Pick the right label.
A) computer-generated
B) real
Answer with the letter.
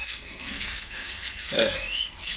A